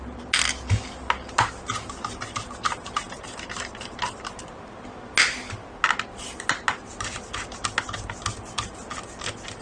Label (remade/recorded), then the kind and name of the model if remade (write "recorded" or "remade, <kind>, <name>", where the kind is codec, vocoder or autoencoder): recorded